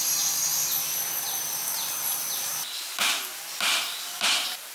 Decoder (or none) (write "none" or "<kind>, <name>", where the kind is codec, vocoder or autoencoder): none